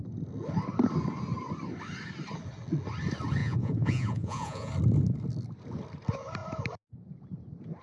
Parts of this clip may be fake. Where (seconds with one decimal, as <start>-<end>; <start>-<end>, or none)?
3.4-4.7